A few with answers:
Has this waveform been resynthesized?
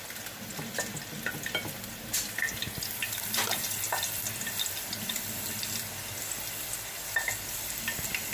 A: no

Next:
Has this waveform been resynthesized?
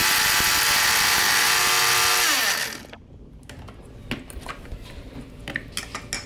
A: no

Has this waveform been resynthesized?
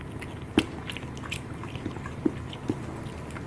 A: no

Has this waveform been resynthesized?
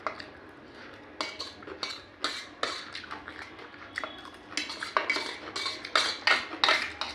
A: no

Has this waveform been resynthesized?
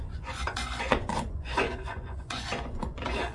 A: yes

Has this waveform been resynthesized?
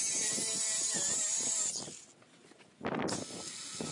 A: no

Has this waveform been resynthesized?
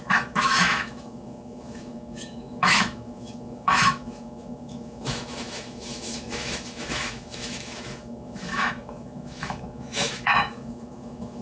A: yes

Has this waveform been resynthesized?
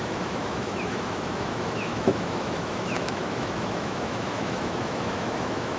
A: yes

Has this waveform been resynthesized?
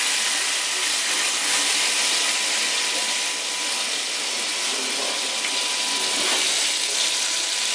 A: no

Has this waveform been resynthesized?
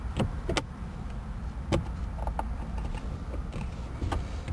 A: no